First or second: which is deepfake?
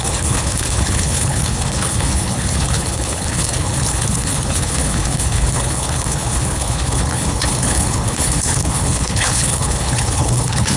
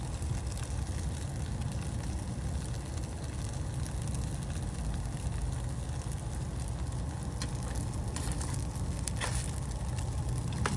first